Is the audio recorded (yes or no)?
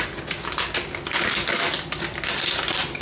yes